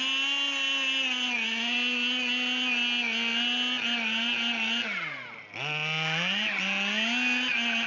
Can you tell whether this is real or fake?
real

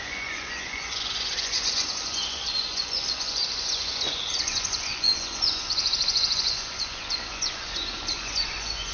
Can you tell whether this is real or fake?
fake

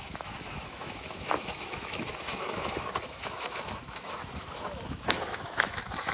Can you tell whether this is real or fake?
fake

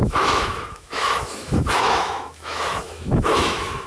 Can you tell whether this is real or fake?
fake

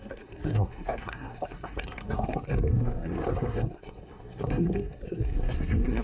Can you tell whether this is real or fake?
fake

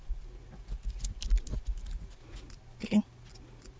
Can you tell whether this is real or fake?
real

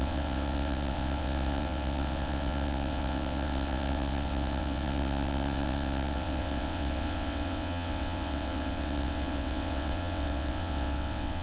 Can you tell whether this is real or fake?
fake